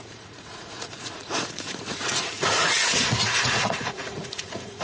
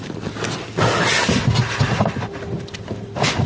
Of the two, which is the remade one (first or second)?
first